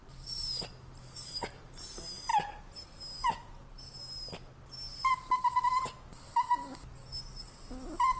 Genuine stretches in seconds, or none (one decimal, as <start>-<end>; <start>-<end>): 0.6-8.2